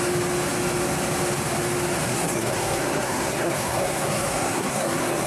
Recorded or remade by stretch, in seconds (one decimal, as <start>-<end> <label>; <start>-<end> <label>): 0.0-2.1 recorded; 2.1-5.3 remade

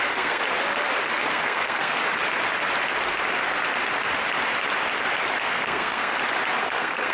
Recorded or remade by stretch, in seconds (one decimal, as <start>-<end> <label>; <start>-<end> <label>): 0.0-0.4 remade; 0.4-1.3 recorded; 1.3-2.0 remade; 2.0-5.4 recorded; 5.4-6.1 remade; 6.1-6.6 recorded; 6.6-7.1 remade

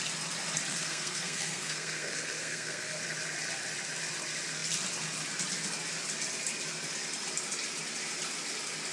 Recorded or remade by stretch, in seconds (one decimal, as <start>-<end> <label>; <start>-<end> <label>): 0.0-0.7 recorded; 0.7-3.0 remade; 3.0-8.9 recorded

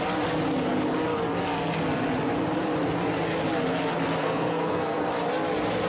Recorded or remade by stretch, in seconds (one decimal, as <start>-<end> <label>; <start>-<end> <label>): 0.0-4.2 recorded; 4.2-5.1 remade; 5.1-5.9 recorded